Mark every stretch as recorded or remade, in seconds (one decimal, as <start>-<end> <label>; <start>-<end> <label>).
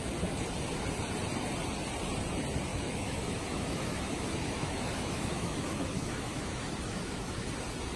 0.0-2.7 recorded; 2.7-7.5 remade; 7.5-8.0 recorded